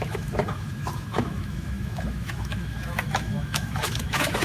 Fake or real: fake